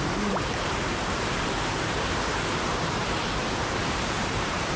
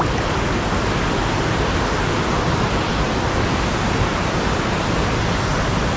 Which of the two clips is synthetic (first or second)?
first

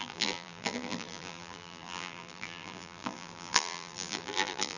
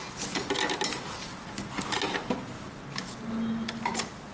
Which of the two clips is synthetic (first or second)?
first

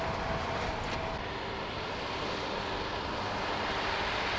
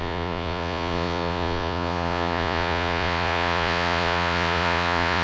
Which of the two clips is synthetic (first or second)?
second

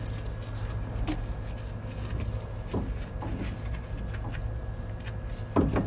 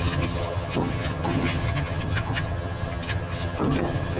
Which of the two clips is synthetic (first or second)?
second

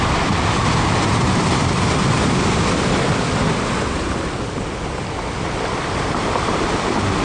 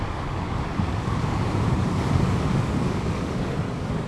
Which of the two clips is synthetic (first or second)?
second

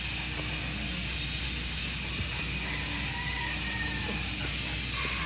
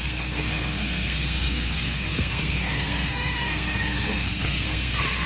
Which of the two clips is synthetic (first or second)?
second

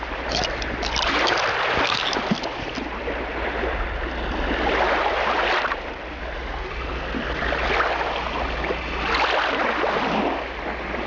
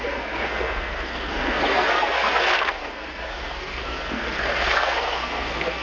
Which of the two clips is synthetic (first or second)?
second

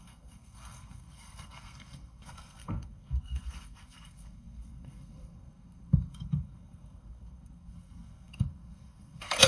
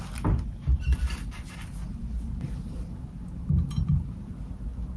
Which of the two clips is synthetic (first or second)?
first